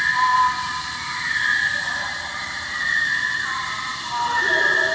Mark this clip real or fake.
fake